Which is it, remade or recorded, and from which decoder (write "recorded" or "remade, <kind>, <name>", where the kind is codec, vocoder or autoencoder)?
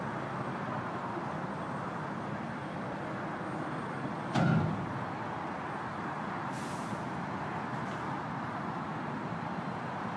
recorded